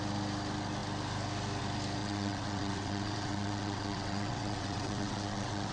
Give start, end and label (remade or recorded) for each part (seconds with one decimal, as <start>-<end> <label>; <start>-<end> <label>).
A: 0.0-2.0 recorded; 2.0-5.7 remade